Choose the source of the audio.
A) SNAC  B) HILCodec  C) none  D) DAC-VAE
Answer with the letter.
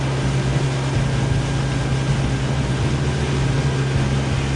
C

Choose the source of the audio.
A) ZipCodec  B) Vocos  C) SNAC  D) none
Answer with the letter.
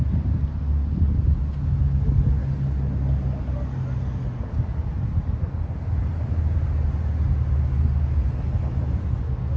D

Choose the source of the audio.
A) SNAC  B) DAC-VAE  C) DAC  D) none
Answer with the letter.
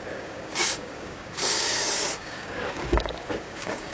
C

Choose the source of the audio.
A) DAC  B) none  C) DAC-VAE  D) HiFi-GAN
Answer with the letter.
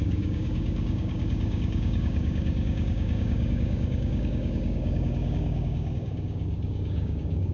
A